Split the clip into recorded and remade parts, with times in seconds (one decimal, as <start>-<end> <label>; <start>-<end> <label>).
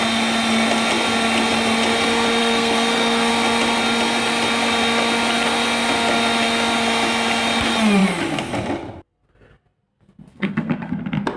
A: 0.0-2.4 recorded; 2.4-3.3 remade; 3.3-10.3 recorded; 10.3-11.0 remade; 11.0-11.4 recorded